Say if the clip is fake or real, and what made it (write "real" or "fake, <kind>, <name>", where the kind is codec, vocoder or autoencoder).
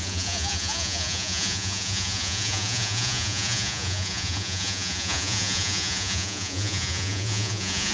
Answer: fake, vocoder, Vocos